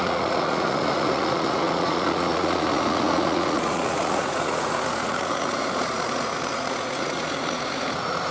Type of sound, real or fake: fake